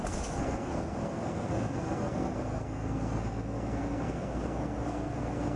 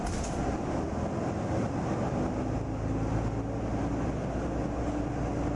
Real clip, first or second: second